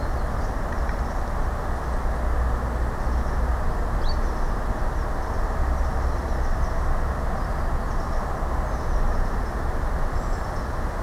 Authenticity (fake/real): real